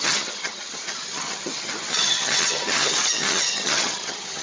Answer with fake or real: fake